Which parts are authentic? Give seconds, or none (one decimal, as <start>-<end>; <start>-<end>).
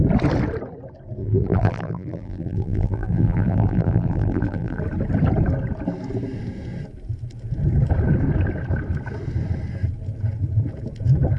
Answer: 0.0-1.2; 4.8-11.4